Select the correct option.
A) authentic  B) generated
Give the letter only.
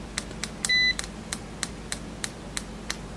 A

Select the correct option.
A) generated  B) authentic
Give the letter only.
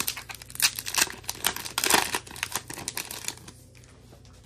B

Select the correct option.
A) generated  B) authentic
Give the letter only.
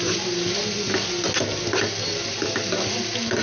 B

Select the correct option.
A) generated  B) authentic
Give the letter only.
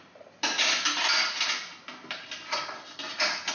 B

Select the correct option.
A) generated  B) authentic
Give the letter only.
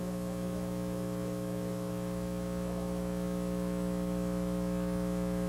A